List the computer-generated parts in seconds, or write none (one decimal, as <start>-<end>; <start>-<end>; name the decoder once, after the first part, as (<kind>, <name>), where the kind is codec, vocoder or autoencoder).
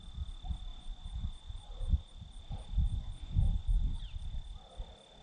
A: 0.7-2.1 (vocoder, Vocos); 2.8-4.0